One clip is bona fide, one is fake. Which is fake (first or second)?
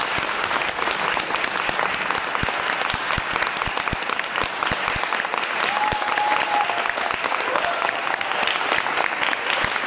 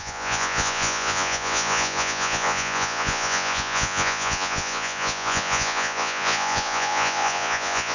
second